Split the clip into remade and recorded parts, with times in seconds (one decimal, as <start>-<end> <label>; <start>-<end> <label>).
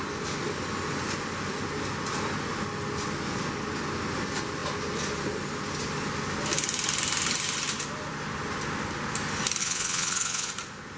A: 0.0-9.6 recorded; 9.6-10.5 remade; 10.5-11.0 recorded